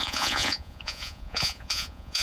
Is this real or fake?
fake